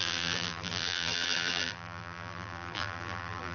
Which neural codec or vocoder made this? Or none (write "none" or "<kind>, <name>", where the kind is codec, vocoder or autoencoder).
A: vocoder, BigVGAN v2